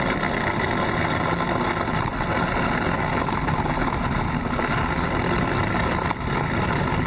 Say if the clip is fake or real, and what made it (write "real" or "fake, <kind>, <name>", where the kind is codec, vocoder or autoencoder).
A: real